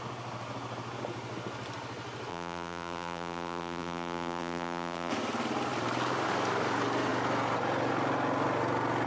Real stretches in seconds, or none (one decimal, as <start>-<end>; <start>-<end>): 0.0-2.3; 5.1-9.1